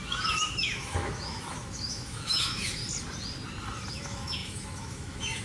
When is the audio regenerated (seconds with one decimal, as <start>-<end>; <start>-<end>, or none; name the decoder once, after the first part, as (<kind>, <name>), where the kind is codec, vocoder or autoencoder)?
0.0-2.8 (autoencoder, DAC-VAE); 3.9-5.4